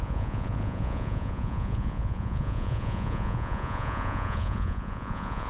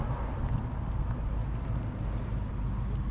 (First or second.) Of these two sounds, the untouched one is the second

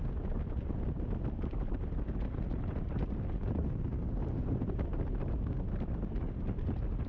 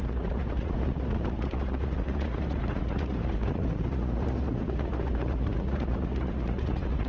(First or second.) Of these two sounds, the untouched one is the first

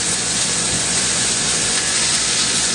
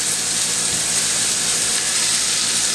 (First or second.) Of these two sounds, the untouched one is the second